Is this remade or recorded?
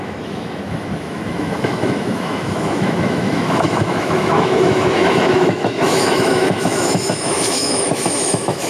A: remade